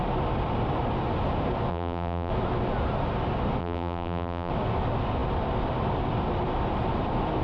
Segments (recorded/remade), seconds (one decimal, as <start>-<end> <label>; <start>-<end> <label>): 0.0-1.7 recorded; 1.7-2.3 remade; 2.3-3.6 recorded; 3.6-4.5 remade; 4.5-7.4 recorded